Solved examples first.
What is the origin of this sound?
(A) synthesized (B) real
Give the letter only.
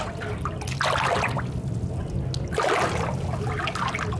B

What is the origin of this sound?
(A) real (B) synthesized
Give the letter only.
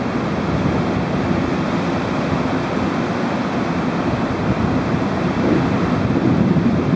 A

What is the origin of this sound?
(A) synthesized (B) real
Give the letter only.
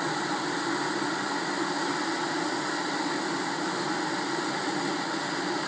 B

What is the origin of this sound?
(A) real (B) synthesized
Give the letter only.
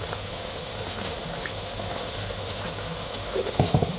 B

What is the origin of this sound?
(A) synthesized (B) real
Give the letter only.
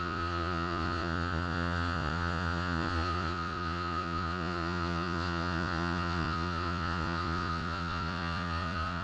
A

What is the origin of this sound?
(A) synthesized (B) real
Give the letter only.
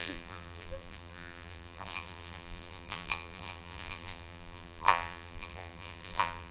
A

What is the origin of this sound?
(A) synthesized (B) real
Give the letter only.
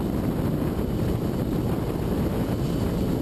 B